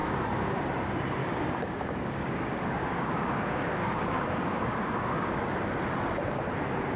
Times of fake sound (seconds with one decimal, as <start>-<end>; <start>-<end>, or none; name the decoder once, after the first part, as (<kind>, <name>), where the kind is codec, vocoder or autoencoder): 0.0-0.6 (codec, DAC); 1.2-5.4